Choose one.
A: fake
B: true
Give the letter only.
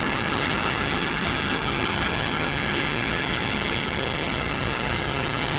A